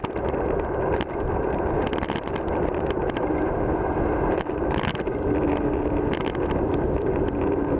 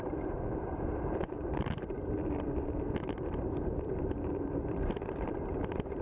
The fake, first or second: second